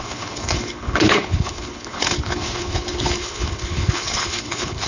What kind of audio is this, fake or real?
fake